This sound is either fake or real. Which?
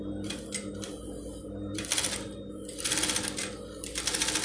real